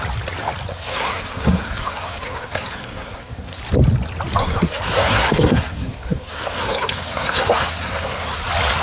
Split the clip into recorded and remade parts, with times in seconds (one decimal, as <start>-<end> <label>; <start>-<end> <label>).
0.0-0.7 recorded; 0.7-3.6 remade; 3.6-4.4 recorded; 4.4-8.4 remade; 8.4-8.8 recorded